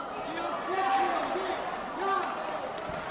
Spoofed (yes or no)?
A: no